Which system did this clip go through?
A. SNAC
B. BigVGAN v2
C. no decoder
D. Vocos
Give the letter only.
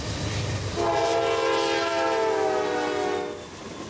C